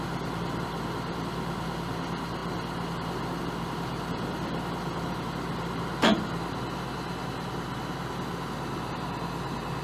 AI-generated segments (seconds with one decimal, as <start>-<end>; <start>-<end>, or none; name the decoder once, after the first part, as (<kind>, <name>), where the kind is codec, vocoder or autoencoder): none

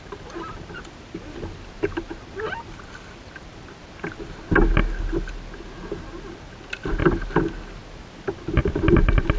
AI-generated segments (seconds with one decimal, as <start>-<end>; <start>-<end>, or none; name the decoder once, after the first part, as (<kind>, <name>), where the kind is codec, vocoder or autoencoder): none

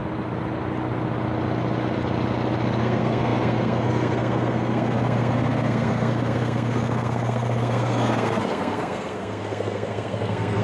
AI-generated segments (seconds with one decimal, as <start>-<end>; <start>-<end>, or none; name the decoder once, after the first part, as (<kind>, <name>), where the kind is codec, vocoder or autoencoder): 2.8-10.6 (codec, SNAC)

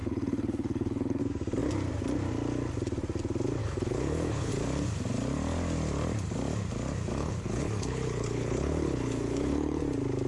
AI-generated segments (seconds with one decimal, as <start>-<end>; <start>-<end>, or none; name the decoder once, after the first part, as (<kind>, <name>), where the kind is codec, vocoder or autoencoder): 0.0-1.2 (codec, HILCodec); 3.6-4.5; 7.2-9.8